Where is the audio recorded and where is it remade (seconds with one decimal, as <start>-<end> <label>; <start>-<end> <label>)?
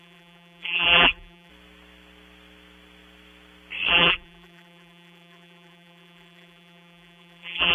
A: 0.0-1.5 remade; 1.5-3.9 recorded; 3.9-7.7 remade